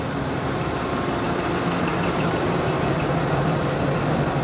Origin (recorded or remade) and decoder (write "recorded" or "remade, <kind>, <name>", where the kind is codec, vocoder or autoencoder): recorded